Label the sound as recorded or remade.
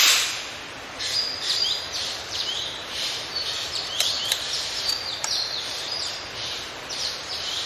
remade